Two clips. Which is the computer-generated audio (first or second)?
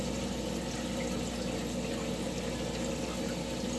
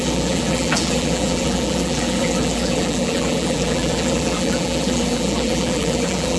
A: second